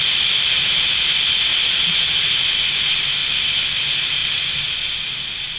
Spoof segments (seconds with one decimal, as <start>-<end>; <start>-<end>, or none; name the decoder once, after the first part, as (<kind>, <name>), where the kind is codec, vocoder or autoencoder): 1.5-2.3 (vocoder, Vocos)